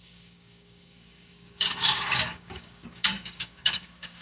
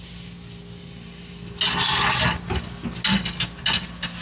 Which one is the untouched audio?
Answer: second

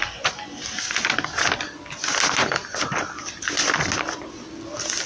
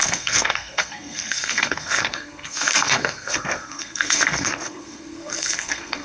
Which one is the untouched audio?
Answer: first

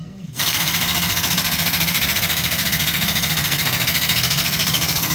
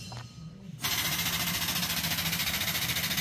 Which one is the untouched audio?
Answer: second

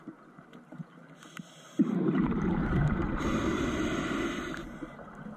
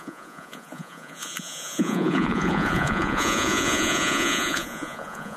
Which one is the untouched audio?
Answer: first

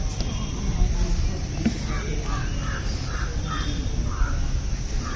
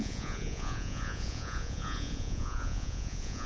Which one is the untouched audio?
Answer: first